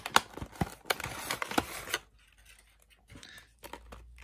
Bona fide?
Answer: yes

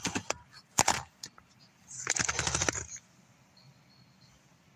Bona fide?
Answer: yes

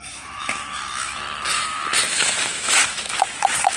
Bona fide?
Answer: no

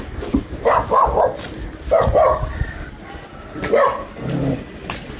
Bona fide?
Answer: yes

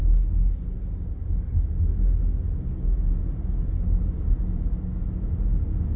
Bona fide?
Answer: yes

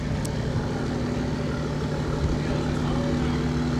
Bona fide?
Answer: yes